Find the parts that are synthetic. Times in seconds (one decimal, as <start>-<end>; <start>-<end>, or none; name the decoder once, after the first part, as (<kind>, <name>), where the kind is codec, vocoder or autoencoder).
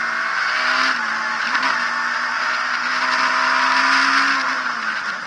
none